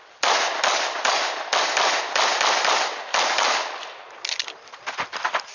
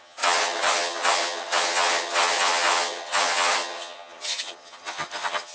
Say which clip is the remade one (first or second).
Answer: second